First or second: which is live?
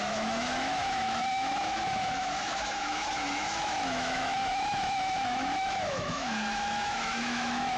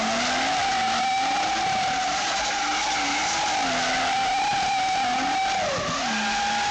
second